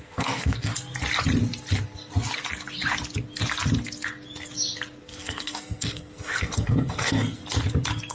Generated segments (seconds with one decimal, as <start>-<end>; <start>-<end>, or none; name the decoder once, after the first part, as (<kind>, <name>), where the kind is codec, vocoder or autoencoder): 0.0-0.7 (codec, SNAC); 5.0-7.4